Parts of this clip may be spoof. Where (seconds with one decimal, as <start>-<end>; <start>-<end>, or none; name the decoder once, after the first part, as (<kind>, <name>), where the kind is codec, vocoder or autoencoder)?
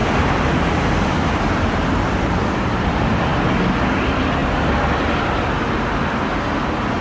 0.0-2.4 (vocoder, BigVGAN v2); 4.4-5.4